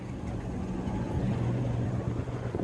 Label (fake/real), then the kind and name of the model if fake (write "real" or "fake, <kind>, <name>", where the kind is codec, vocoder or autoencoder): fake, vocoder, Vocos